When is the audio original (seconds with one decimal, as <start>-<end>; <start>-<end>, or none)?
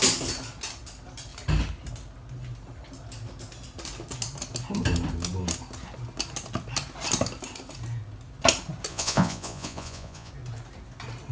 0.0-8.9; 10.3-11.3